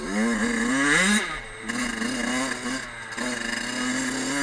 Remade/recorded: recorded